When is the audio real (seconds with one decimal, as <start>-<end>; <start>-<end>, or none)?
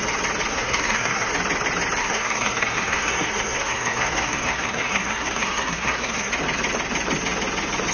0.0-0.5; 1.3-2.0; 6.3-7.9